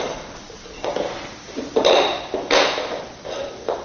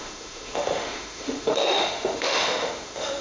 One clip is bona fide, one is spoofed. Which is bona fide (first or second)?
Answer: first